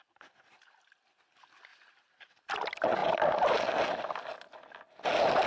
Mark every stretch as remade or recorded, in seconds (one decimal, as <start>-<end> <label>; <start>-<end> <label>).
0.0-1.7 recorded; 1.7-2.5 remade; 2.5-5.5 recorded